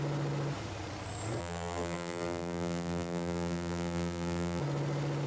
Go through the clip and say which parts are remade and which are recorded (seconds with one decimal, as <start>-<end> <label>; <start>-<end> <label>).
0.0-1.4 recorded; 1.4-4.6 remade; 4.6-5.3 recorded